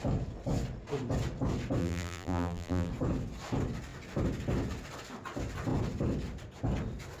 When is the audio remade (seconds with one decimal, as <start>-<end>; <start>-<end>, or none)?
1.8-2.9